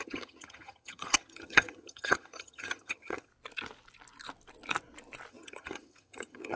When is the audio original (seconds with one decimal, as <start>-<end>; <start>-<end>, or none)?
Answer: 3.3-5.3